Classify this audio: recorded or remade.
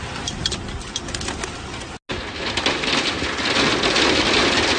recorded